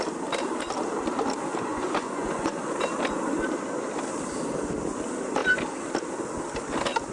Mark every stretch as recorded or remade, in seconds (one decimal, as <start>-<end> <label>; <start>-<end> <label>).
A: 0.0-1.7 recorded; 1.7-2.6 remade; 2.6-7.1 recorded